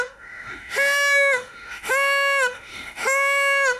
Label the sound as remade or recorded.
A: remade